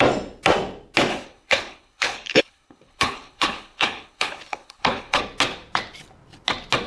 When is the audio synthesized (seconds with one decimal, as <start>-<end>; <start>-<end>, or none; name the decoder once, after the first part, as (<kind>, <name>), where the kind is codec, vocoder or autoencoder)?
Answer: 1.1-5.2 (codec, HILCodec)